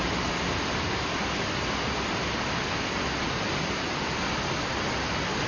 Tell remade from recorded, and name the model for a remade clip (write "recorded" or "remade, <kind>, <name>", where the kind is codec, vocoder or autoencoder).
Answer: recorded